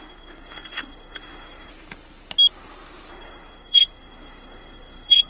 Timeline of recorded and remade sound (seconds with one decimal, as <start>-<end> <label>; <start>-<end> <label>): 0.0-1.7 remade; 1.7-3.1 recorded; 3.1-5.3 remade